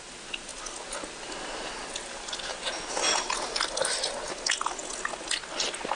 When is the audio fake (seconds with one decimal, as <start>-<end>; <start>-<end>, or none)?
none